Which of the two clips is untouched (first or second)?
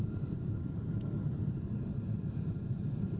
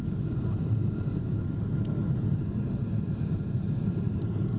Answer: second